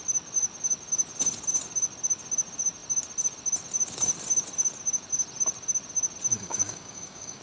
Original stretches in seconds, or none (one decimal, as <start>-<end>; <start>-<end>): 0.0-6.3